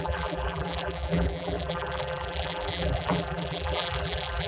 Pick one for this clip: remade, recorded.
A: remade